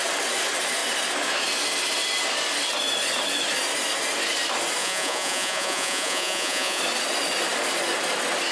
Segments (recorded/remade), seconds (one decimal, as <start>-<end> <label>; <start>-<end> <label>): 0.0-4.8 recorded; 4.8-6.8 remade; 6.8-8.5 recorded